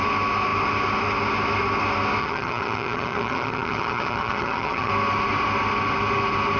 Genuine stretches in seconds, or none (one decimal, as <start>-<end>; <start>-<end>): 0.0-2.2; 4.9-6.6